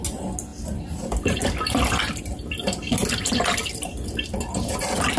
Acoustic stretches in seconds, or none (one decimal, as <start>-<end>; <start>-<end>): 0.0-5.2